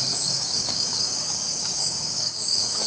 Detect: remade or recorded remade